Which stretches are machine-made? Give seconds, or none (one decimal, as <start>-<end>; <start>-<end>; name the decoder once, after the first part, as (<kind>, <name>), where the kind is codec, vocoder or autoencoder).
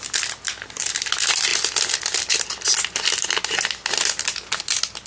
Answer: none